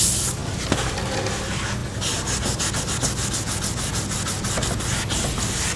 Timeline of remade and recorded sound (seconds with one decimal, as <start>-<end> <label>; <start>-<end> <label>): 0.0-5.8 recorded